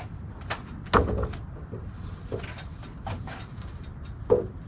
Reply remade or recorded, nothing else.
recorded